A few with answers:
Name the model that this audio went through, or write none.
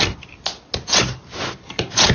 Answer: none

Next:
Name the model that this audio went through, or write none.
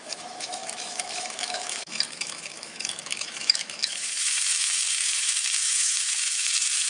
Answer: autoencoder, DAC-VAE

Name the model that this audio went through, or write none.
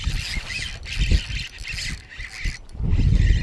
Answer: none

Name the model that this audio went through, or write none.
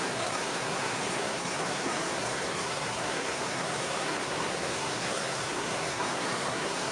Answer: codec, SNAC